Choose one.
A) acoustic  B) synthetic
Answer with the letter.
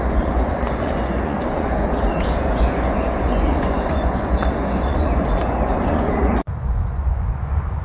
B